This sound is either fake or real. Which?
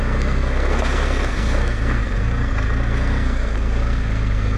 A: fake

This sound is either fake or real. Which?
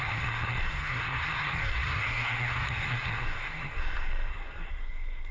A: fake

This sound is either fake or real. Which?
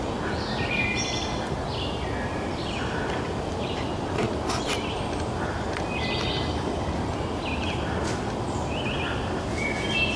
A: real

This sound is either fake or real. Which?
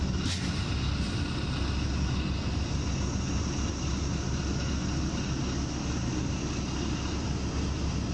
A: real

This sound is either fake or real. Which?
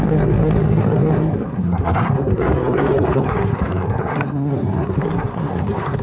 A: fake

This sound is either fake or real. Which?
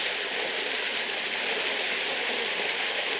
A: real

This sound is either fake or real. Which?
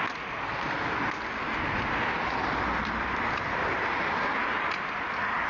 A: real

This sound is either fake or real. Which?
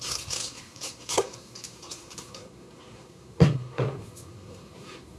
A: fake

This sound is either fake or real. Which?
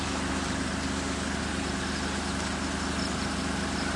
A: real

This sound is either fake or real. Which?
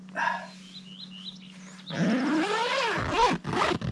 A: real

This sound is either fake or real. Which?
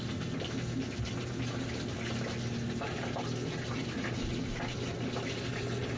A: real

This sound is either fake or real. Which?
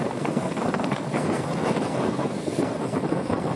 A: fake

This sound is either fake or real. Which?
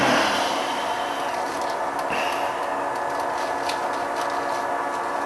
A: real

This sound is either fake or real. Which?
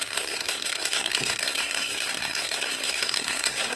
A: fake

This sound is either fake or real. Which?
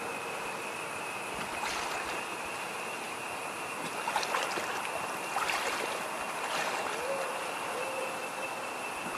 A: real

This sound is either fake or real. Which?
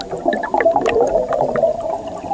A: real